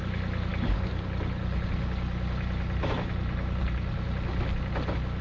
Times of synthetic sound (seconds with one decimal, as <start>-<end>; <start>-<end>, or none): none